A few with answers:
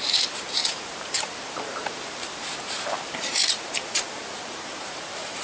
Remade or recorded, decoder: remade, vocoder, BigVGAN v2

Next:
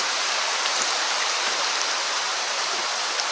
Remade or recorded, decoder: remade, vocoder, BigVGAN v2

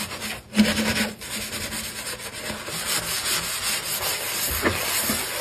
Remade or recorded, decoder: recorded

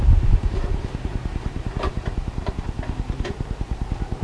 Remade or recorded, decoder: remade, vocoder, BigVGAN v2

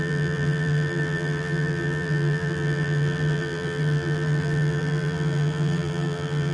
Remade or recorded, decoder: remade, vocoder, BigVGAN v2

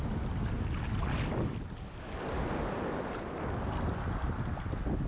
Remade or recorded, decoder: recorded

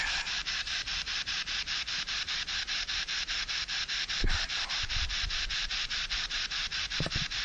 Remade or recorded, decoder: remade, vocoder, BigVGAN v2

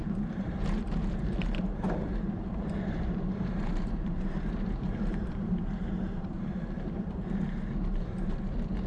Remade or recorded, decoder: remade, vocoder, BigVGAN v2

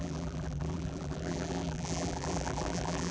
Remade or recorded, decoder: remade, vocoder, BigVGAN v2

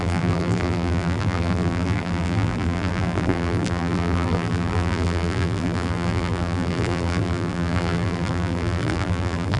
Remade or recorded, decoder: remade, vocoder, BigVGAN v2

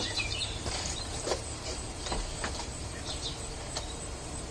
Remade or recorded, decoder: remade, vocoder, BigVGAN v2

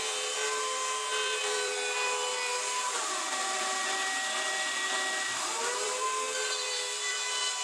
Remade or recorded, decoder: remade, vocoder, BigVGAN v2